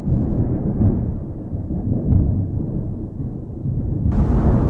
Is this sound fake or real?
fake